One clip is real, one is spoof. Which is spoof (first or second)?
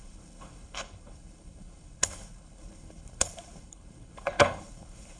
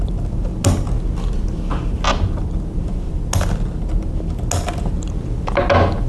first